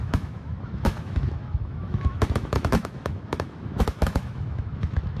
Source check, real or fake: fake